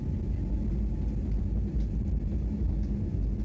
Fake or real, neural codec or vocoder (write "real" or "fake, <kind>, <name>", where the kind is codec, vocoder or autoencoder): real